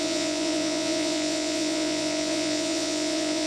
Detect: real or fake fake